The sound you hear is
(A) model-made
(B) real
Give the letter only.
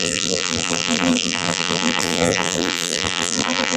A